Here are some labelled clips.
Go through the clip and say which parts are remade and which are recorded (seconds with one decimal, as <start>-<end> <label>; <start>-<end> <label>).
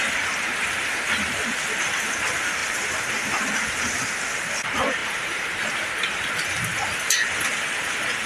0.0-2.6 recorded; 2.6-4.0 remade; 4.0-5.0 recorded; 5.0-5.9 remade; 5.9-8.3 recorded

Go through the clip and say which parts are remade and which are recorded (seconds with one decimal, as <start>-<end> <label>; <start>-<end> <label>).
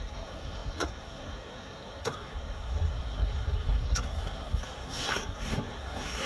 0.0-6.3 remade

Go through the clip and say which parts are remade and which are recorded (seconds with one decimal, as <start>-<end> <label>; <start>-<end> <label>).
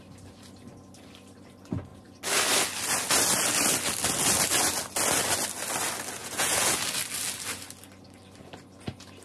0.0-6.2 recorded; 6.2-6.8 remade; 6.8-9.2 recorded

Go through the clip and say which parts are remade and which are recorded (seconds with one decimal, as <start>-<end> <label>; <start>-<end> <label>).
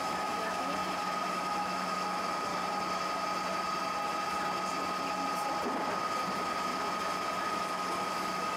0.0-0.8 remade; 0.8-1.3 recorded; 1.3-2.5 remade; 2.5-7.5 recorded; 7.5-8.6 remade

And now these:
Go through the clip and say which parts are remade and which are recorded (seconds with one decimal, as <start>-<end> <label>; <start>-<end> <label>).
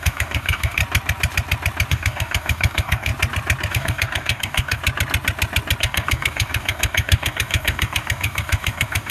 0.0-0.8 remade; 0.8-1.9 recorded; 1.9-3.1 remade; 3.1-3.7 recorded; 3.7-4.8 remade; 4.8-5.8 recorded; 5.8-9.1 remade